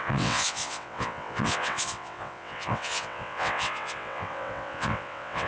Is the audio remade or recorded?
remade